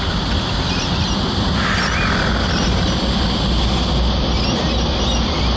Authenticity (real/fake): real